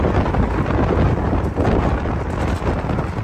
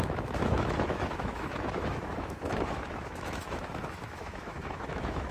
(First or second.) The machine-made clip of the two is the second